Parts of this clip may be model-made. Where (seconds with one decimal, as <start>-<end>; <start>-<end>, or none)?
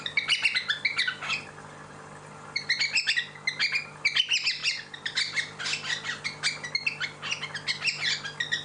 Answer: 4.6-5.6